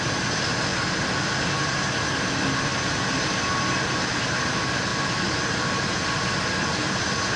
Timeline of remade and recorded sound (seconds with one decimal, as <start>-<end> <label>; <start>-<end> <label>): 0.0-7.4 recorded